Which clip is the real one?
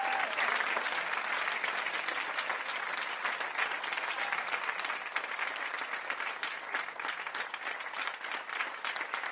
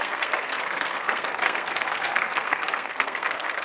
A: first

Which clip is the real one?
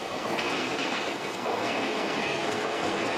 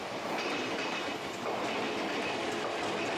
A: second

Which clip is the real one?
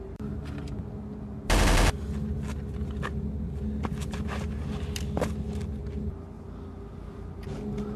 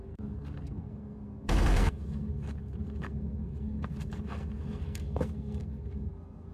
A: first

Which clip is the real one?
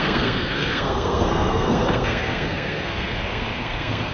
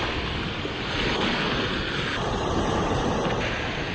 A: second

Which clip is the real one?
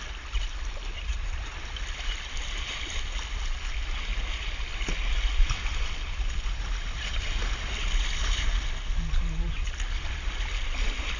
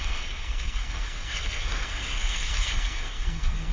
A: first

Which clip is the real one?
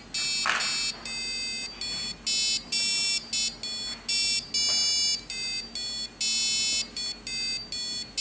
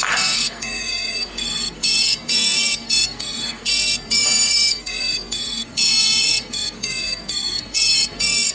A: first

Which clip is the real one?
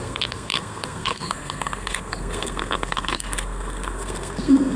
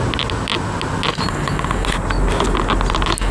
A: second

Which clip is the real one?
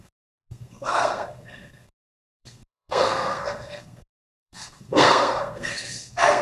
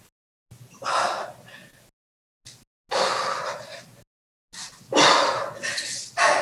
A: second